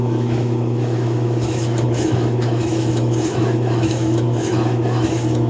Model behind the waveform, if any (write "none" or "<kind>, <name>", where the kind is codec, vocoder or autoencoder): autoencoder, DAC-VAE